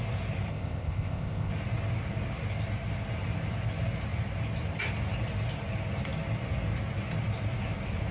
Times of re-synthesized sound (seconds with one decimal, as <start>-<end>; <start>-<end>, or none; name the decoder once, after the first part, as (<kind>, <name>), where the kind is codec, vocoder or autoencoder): 0.5-1.5 (codec, ZipCodec)